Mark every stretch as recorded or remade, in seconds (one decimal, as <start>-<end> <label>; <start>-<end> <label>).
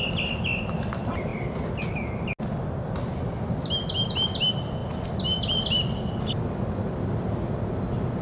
0.0-8.2 recorded